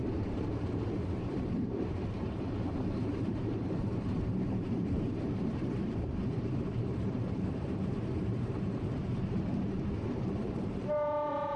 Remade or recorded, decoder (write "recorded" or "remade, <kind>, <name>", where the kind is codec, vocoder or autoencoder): remade, vocoder, BigVGAN v2